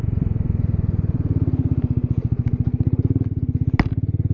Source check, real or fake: real